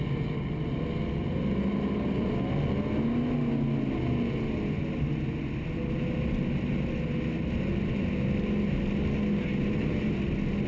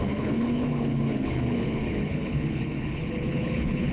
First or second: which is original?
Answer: first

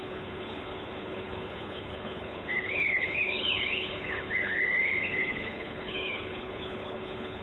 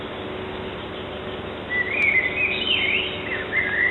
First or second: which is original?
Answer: second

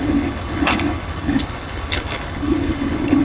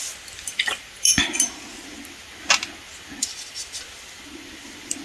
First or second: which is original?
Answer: second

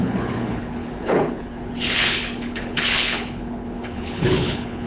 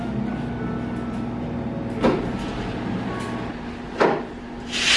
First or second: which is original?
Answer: second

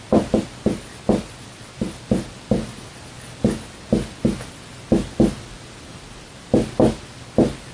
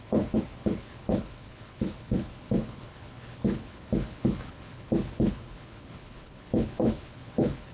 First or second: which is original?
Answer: first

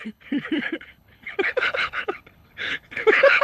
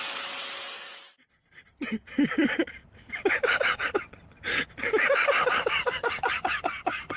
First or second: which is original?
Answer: second